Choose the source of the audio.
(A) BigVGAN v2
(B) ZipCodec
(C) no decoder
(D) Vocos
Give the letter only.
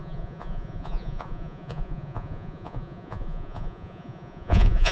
D